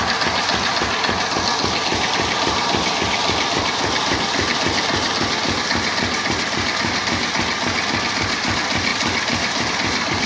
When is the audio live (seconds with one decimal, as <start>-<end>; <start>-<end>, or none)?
0.0-1.9; 5.6-8.9; 9.7-10.3